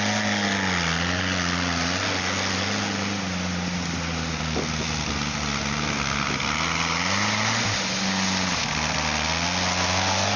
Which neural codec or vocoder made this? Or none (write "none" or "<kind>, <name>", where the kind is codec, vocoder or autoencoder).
none